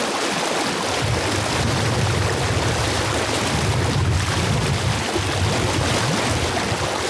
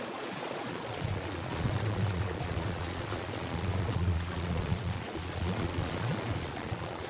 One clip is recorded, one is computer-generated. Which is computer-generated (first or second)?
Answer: second